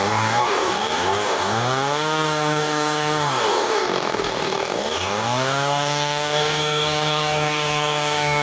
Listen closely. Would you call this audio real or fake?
fake